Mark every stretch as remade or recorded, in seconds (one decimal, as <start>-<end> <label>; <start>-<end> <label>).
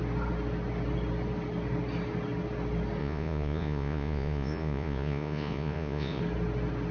0.0-3.0 recorded; 3.0-6.2 remade; 6.2-6.9 recorded